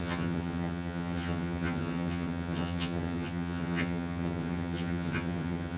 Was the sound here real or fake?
fake